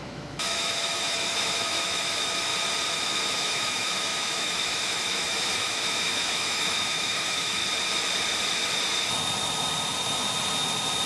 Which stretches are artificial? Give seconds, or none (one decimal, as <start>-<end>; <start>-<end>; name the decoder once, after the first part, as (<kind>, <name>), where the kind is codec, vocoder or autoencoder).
0.0-2.5 (autoencoder, DAC-VAE); 3.3-7.6